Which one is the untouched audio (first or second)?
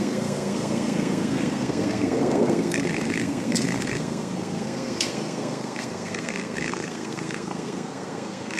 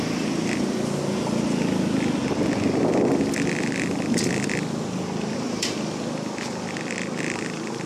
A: second